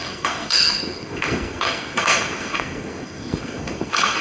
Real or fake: fake